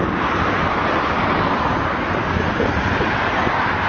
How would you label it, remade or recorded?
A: recorded